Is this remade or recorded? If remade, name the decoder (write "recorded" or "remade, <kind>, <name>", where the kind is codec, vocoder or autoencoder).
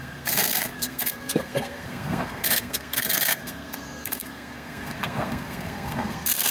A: remade, codec, SNAC